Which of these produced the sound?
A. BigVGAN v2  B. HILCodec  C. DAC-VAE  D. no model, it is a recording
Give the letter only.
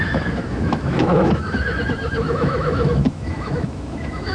C